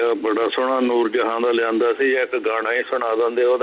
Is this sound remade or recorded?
recorded